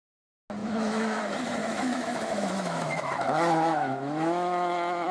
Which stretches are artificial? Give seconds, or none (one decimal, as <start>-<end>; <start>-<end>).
0.6-1.2; 1.6-5.1